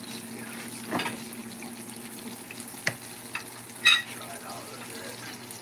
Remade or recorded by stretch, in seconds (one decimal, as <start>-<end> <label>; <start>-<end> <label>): 0.0-5.6 recorded